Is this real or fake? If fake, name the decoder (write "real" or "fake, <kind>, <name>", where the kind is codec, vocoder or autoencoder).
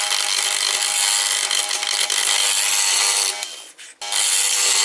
real